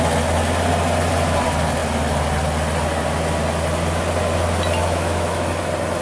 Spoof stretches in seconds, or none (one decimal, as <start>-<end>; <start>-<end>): 4.8-5.6